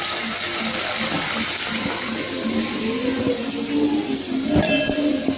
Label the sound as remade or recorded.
recorded